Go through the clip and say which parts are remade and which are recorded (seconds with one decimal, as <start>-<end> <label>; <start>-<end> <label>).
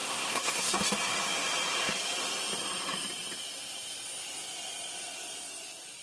0.0-0.8 remade; 0.8-6.0 recorded